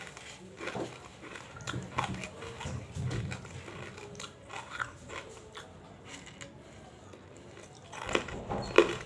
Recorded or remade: recorded